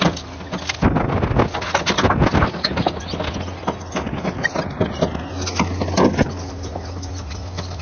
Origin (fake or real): real